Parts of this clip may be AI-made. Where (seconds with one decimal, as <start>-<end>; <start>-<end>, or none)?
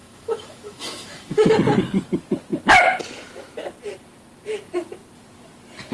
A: 0.0-1.5